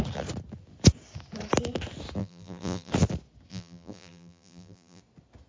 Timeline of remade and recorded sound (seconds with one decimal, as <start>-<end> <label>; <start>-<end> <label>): 0.0-2.2 recorded; 2.2-2.9 remade; 2.9-3.5 recorded; 3.5-5.0 remade; 5.0-5.5 recorded